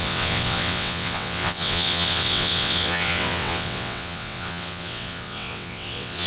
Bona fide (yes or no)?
no